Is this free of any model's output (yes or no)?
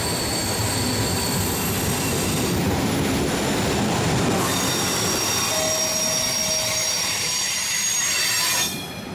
yes